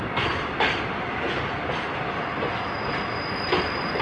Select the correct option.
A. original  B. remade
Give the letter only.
A